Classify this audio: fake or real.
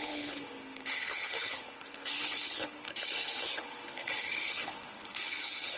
fake